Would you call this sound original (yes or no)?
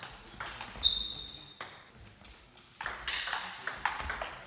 yes